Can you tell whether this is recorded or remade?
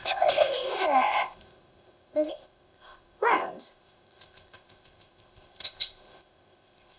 remade